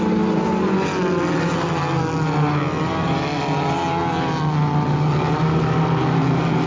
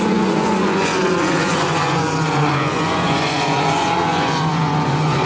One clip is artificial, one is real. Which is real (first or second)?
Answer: first